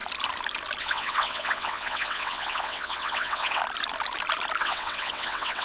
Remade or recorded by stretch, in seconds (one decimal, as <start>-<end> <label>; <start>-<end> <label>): 0.0-0.8 recorded; 0.8-3.6 remade; 3.6-4.6 recorded; 4.6-5.6 remade